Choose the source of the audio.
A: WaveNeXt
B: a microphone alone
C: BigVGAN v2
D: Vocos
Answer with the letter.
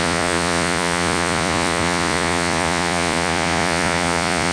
D